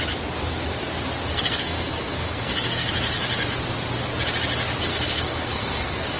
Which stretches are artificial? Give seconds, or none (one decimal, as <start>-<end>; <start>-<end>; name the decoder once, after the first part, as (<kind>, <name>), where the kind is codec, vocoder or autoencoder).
1.3-2.9 (codec, SNAC); 4.9-6.2